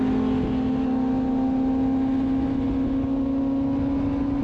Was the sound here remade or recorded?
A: recorded